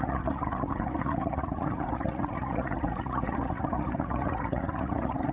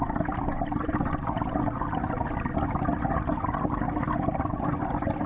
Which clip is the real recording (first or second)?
second